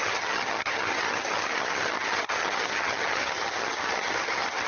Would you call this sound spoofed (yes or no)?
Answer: yes